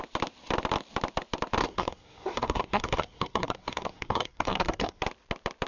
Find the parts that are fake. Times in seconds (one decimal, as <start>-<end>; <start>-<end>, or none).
1.6-5.0